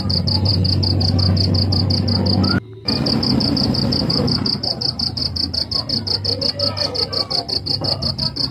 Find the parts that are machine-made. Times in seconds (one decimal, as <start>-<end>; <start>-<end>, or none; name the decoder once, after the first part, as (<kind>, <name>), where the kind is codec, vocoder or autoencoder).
0.0-0.5 (vocoder, BigVGAN v2); 3.1-5.2; 8.1-8.5